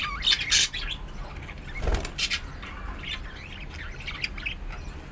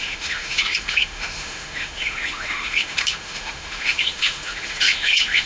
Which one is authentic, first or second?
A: first